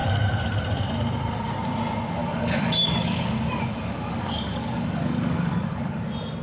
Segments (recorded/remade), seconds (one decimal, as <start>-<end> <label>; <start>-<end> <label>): 0.0-2.2 recorded; 2.2-6.0 remade; 6.0-6.4 recorded